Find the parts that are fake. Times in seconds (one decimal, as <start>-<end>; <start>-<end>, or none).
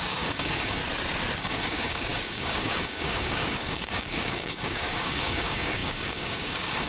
0.0-0.8; 1.4-6.9